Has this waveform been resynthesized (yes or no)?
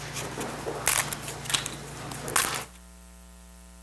no